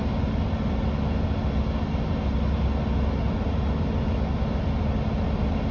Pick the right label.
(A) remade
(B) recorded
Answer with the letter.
B